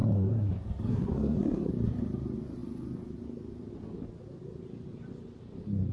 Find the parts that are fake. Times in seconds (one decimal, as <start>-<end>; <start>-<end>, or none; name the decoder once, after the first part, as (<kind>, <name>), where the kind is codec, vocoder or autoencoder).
0.0-0.5 (codec, SNAC); 0.9-1.7